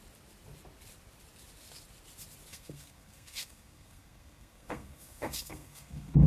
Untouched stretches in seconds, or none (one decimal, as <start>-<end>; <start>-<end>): 0.0-2.5